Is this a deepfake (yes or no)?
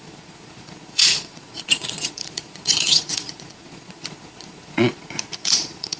yes